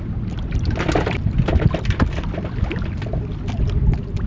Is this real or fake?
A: real